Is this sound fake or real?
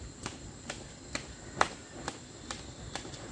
real